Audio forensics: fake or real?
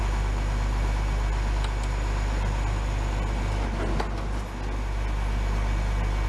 real